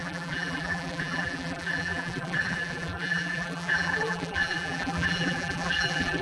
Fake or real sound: fake